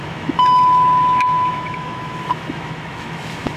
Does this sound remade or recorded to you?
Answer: remade